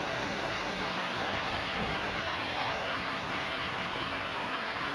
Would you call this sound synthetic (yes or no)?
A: yes